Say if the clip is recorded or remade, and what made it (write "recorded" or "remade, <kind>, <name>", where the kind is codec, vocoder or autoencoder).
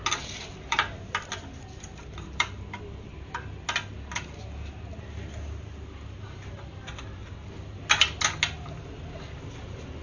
recorded